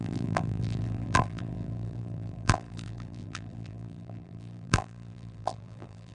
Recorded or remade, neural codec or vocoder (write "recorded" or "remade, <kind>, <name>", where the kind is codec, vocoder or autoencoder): remade, vocoder, BigVGAN v2